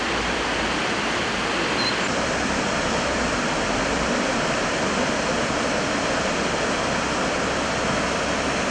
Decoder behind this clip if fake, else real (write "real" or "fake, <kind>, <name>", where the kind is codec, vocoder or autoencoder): fake, vocoder, BigVGAN v2